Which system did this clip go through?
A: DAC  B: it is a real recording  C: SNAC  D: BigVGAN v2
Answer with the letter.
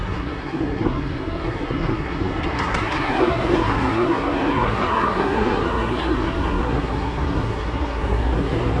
C